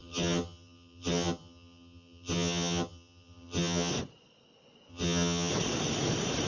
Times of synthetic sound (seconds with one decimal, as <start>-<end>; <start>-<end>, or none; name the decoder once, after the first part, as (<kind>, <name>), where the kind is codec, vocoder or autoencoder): 0.0-3.9 (vocoder, HiFi-GAN); 4.9-5.5